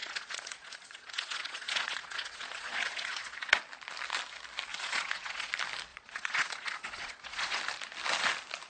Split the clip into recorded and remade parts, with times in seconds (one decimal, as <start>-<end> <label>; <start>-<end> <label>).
0.0-3.6 remade; 3.6-4.7 recorded; 4.7-5.5 remade; 5.5-5.9 recorded; 5.9-7.6 remade; 7.6-8.7 recorded